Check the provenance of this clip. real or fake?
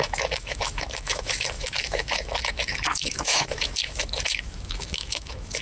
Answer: fake